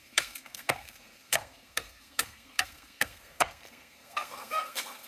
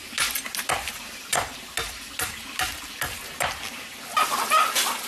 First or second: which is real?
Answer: second